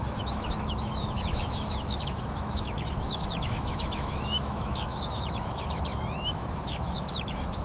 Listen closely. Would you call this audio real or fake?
fake